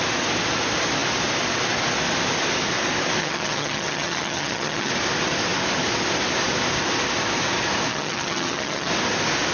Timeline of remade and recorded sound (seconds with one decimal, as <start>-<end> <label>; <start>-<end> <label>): 0.0-3.2 recorded; 3.2-4.9 remade; 4.9-7.9 recorded; 7.9-8.9 remade; 8.9-9.5 recorded

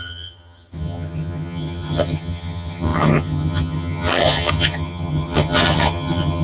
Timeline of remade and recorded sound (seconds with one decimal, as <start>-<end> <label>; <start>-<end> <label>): 0.0-6.4 remade

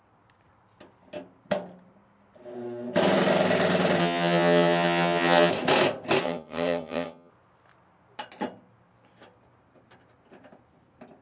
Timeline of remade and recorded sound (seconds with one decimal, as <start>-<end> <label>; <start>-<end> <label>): 0.0-4.0 recorded; 4.0-5.5 remade; 5.5-6.2 recorded; 6.2-7.3 remade; 7.3-11.2 recorded

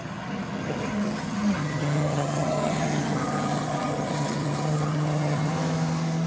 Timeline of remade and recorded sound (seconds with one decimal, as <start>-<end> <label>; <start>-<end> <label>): 0.0-5.5 remade; 5.5-6.3 recorded